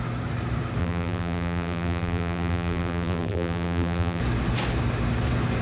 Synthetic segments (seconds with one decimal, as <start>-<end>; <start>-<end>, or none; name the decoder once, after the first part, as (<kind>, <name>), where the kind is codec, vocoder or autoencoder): 0.8-4.2 (vocoder, BigVGAN v2)